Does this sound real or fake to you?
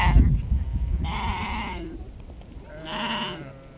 real